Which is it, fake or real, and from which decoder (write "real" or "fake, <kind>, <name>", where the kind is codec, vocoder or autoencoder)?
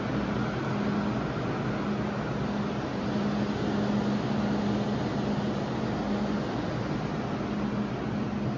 real